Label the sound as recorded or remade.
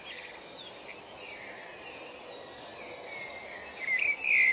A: recorded